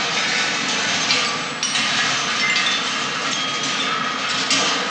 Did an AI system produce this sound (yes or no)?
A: no